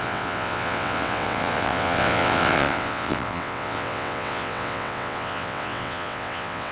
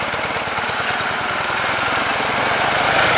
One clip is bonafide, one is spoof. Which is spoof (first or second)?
first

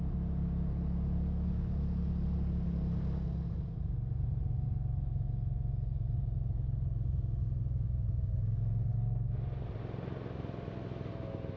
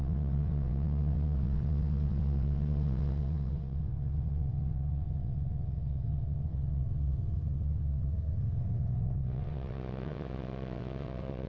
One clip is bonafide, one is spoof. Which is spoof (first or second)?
second